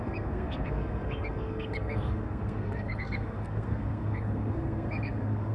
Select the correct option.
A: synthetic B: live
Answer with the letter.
A